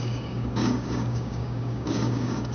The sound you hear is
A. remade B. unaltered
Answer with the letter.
A